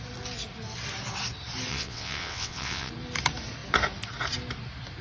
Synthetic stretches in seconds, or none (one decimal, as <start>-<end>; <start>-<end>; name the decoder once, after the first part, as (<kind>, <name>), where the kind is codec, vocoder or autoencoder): 1.7-2.9 (vocoder, WaveNeXt)